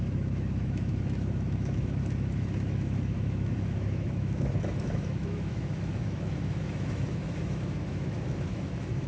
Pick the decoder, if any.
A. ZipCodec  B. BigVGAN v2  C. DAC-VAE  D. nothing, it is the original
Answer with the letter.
C